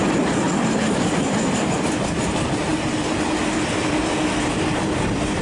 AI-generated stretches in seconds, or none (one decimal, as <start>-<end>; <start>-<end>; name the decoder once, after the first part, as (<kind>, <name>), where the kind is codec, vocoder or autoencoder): none